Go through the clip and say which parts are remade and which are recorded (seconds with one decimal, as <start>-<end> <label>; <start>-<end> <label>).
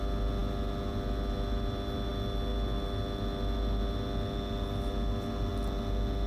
0.0-6.3 recorded